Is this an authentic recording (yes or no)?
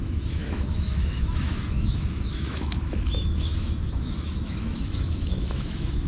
no